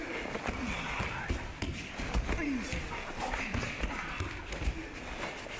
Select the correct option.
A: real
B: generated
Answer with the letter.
A